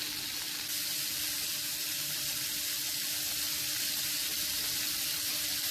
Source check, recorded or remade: recorded